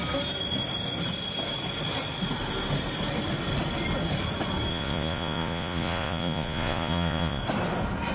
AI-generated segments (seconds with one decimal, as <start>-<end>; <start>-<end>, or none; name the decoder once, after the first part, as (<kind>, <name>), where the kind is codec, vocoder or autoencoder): 4.7-7.4 (vocoder, Vocos)